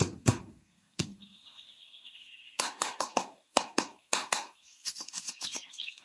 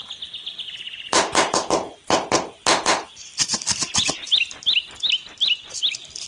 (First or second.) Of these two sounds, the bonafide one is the second